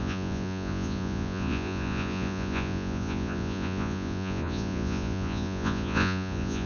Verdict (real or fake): fake